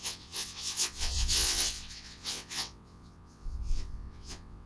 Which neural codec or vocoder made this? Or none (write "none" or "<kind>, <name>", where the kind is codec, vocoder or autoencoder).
vocoder, WaveNeXt